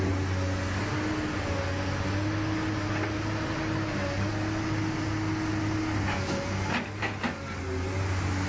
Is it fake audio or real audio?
real